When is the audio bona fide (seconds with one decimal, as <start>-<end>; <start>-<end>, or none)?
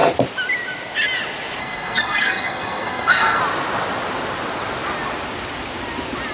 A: 0.0-1.6; 3.4-6.3